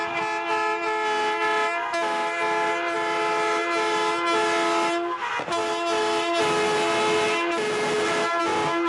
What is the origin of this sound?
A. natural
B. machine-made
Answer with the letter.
A